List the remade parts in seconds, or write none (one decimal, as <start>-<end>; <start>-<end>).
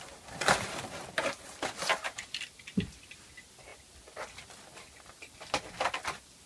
none